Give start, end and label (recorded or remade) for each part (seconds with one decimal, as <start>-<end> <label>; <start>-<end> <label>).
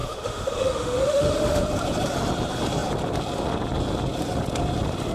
0.0-1.6 remade; 1.6-5.1 recorded